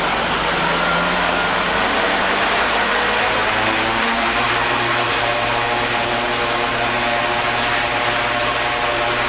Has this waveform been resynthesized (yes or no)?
yes